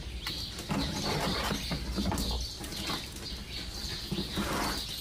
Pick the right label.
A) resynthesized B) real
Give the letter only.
B